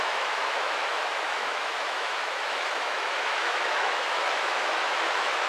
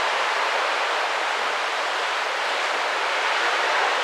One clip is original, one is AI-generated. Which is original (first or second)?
second